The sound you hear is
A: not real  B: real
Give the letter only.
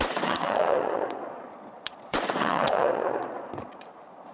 A